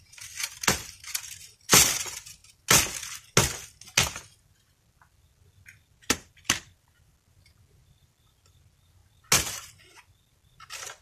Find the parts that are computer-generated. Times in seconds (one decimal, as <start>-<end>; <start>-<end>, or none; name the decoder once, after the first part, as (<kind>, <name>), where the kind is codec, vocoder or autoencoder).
none